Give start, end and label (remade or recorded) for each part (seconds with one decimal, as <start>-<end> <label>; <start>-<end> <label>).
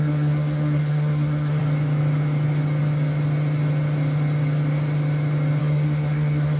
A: 0.0-1.6 remade; 1.6-5.6 recorded; 5.6-6.6 remade